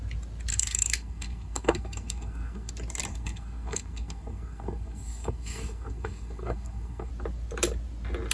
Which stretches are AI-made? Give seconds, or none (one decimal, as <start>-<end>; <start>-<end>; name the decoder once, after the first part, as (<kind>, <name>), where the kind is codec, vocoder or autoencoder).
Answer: 0.5-2.7 (codec, SNAC); 3.1-7.1